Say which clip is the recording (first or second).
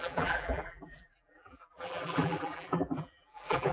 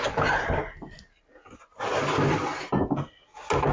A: second